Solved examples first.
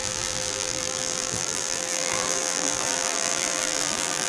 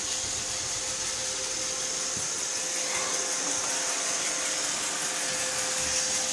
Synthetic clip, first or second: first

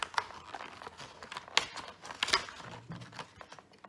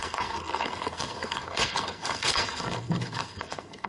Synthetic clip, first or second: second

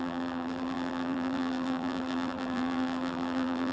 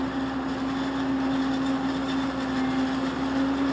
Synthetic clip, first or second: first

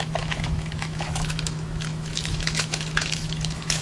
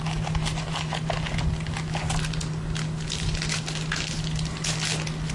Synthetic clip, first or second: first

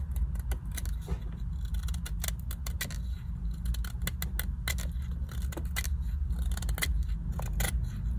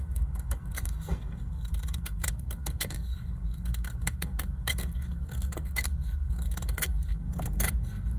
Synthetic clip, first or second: second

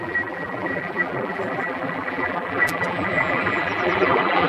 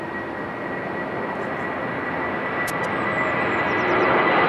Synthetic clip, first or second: first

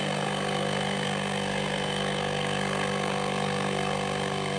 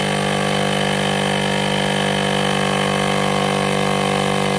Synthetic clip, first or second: first